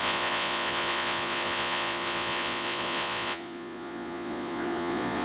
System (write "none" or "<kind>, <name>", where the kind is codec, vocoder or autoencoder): vocoder, Vocos